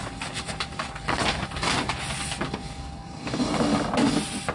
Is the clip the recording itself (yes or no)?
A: yes